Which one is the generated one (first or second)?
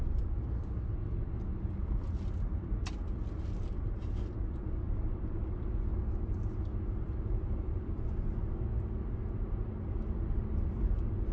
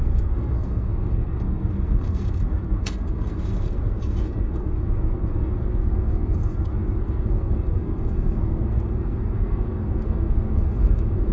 second